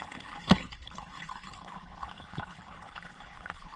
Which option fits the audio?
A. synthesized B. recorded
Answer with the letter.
A